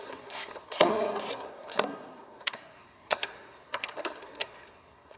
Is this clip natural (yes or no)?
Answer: no